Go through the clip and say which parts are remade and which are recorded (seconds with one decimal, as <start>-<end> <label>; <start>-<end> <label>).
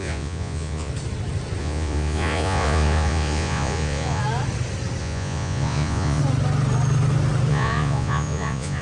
0.0-0.9 remade; 0.9-1.6 recorded; 1.6-4.2 remade; 4.2-5.0 recorded; 5.0-6.2 remade; 6.2-7.5 recorded; 7.5-8.8 remade